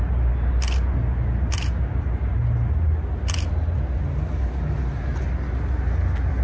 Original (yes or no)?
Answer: yes